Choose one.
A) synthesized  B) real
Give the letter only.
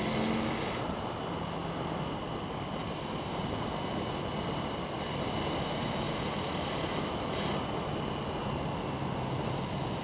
B